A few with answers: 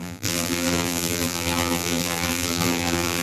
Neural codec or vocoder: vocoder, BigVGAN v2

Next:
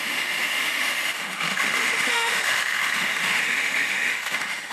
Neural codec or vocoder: autoencoder, DAC-VAE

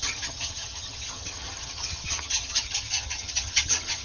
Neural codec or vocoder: vocoder, HiFi-GAN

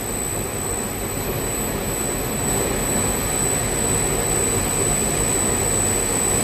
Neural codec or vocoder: none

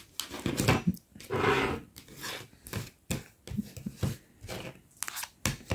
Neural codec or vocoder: none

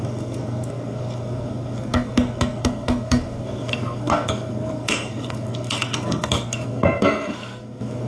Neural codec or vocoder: codec, SNAC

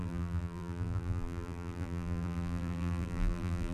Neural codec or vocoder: vocoder, BigVGAN v2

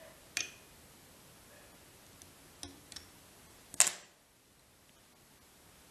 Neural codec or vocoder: none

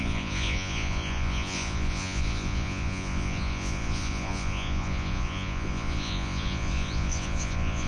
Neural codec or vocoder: vocoder, Vocos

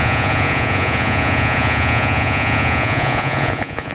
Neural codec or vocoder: vocoder, Vocos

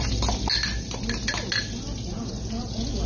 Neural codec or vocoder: none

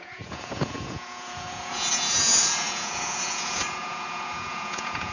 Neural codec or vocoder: vocoder, Vocos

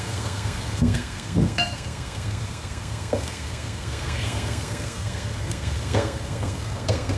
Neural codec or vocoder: codec, SNAC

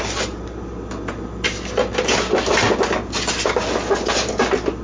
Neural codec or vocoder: none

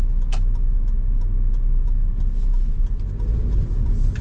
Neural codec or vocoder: none